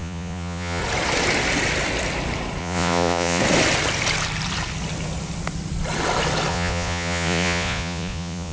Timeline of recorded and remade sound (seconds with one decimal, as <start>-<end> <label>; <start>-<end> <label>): 0.0-0.8 remade; 0.8-2.6 recorded; 2.6-3.4 remade; 3.4-6.5 recorded; 6.5-8.5 remade